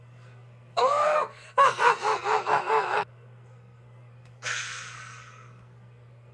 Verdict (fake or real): fake